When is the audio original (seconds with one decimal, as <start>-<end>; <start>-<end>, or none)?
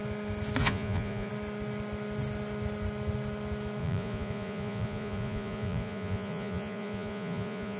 0.0-0.6; 1.3-3.8